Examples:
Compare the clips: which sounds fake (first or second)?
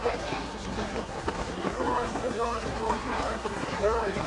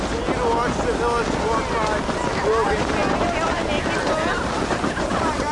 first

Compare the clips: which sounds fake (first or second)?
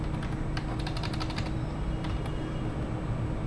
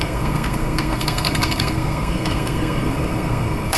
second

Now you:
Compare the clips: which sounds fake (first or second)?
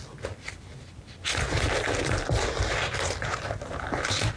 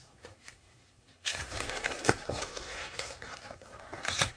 second